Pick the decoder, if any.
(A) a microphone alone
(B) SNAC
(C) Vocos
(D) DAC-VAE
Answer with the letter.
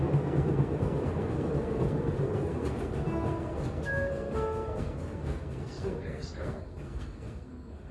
B